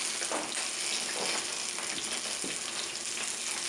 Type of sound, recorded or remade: recorded